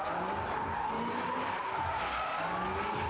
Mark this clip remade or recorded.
recorded